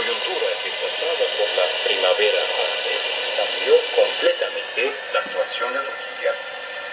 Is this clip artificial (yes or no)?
no